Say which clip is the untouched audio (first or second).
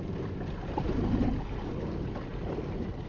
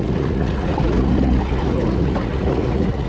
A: first